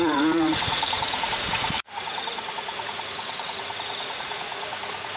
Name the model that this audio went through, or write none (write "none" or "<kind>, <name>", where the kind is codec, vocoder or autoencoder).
vocoder, Vocos